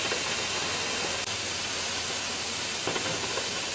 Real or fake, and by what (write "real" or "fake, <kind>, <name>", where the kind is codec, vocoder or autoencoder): real